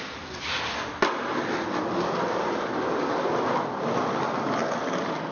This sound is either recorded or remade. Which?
recorded